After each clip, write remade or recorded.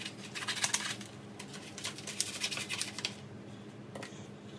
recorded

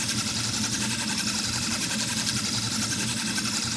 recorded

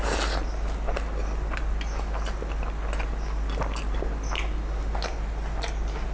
recorded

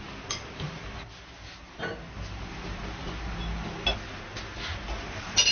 recorded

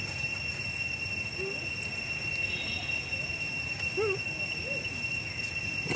recorded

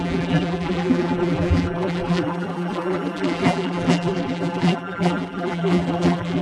remade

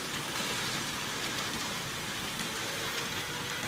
remade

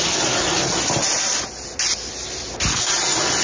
recorded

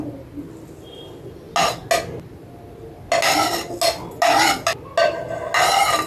recorded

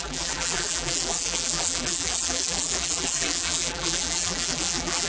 remade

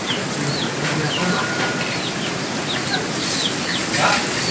recorded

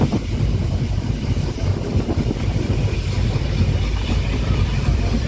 remade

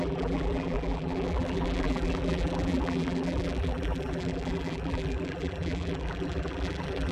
remade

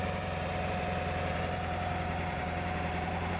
remade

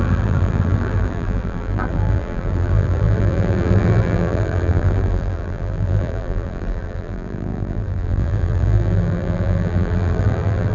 remade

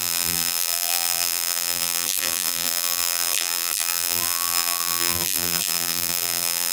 remade